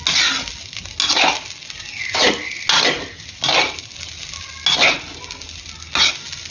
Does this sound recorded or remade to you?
recorded